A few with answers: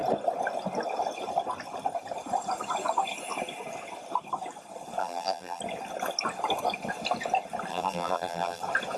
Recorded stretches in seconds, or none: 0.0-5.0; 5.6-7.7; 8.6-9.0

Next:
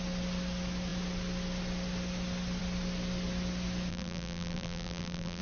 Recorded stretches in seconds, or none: 0.0-3.9

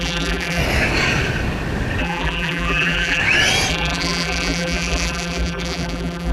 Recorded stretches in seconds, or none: 0.6-2.0; 3.2-3.7

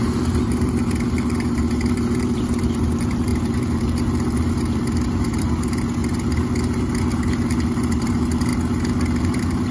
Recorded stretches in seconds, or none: 6.0-7.0; 8.5-9.2

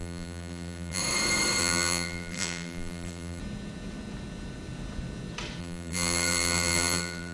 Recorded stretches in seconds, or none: 1.0-1.6; 3.4-5.6

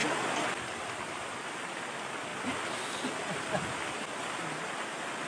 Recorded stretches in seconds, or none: 0.0-5.3

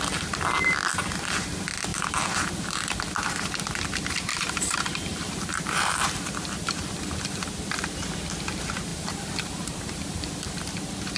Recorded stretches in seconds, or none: 0.0-1.9; 3.0-4.3; 7.5-8.9; 10.6-11.2

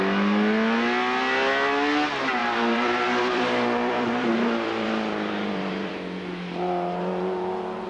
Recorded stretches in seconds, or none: 0.0-2.4; 5.9-7.9